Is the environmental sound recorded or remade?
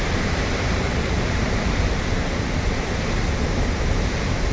remade